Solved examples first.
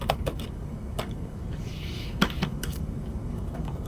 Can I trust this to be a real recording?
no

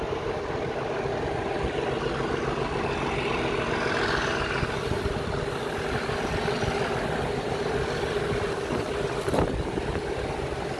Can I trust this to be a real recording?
yes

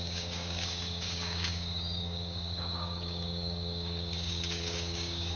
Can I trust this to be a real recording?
no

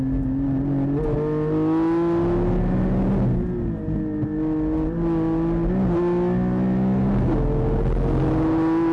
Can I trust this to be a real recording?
yes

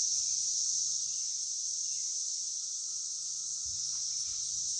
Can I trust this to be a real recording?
yes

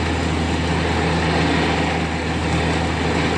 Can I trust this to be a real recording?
yes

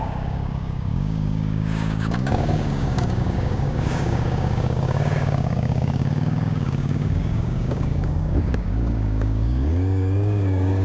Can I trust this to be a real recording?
no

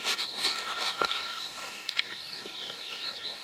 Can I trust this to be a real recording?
no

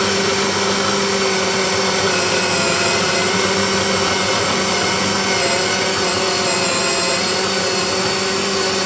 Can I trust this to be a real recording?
yes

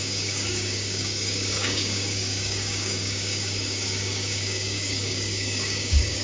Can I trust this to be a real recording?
no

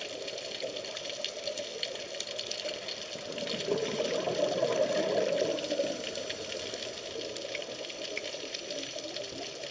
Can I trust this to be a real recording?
yes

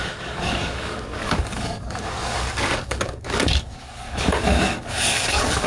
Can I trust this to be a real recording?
no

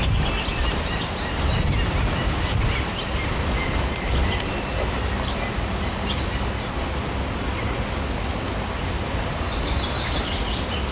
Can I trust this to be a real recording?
yes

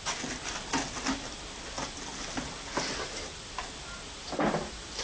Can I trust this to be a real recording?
yes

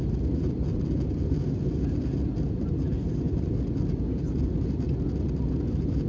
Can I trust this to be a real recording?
yes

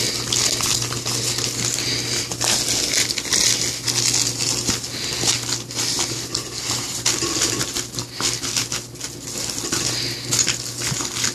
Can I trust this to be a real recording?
yes